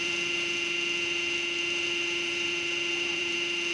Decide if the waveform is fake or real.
fake